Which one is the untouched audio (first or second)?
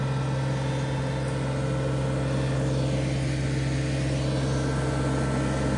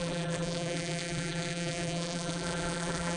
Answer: first